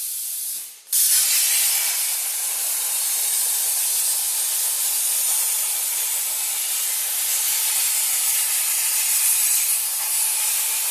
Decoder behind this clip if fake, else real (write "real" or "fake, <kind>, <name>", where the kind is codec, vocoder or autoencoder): real